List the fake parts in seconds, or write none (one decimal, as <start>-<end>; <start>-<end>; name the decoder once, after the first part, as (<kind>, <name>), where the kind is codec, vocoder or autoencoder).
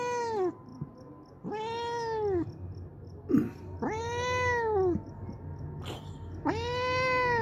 none